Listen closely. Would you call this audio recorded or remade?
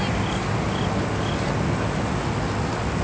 recorded